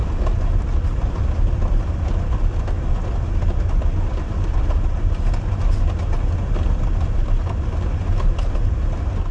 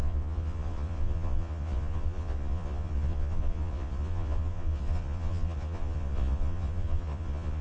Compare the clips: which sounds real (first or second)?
first